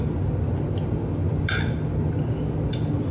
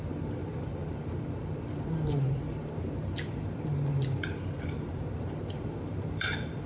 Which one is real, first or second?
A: first